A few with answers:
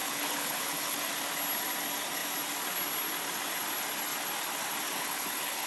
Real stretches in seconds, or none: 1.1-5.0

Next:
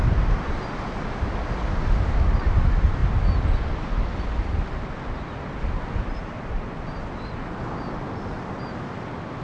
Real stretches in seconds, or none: 0.0-9.4

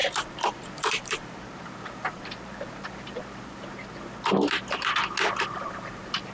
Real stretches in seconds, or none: 3.8-5.6

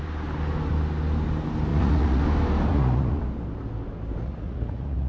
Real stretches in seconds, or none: 0.0-1.7; 2.2-2.7; 3.2-4.2

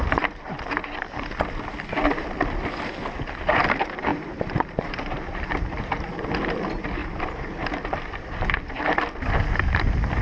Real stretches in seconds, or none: 0.0-4.1; 6.1-7.0; 8.4-10.2

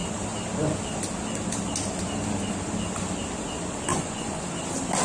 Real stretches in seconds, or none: 0.0-3.9; 4.4-5.0

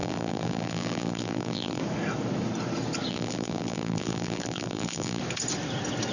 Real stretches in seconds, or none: 1.8-3.1; 5.2-6.1